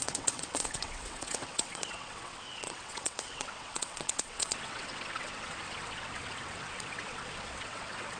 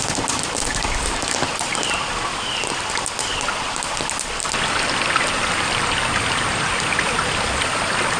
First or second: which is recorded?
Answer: second